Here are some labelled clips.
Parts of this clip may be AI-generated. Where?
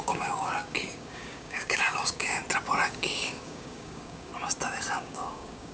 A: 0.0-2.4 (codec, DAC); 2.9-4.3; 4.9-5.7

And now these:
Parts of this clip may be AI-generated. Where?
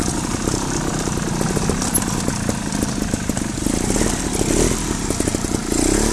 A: none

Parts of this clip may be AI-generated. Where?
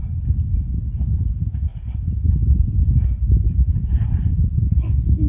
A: none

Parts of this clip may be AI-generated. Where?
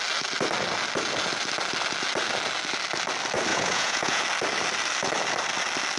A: 3.5-4.2 (vocoder, Vocos)